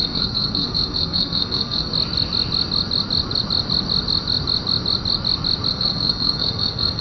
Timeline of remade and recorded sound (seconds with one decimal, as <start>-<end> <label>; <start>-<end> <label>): 0.0-1.9 remade; 1.9-5.7 recorded; 5.7-7.0 remade